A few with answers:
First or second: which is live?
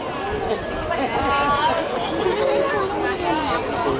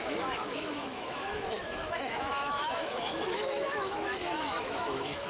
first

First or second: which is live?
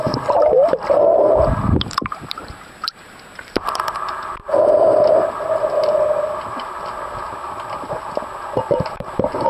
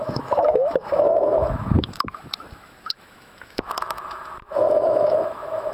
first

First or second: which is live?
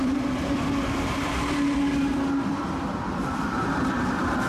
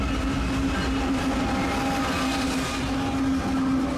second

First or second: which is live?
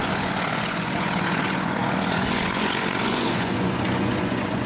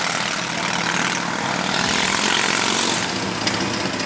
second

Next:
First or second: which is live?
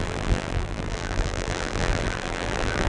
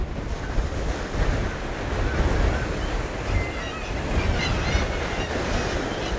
second